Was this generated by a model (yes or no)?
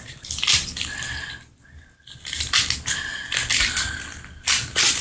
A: no